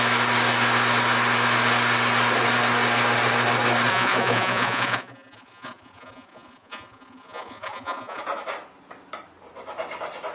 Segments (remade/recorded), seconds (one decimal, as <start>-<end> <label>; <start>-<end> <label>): 0.0-3.9 recorded; 3.9-8.2 remade; 8.2-10.3 recorded